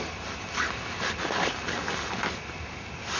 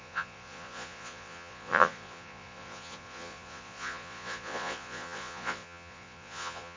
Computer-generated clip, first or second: second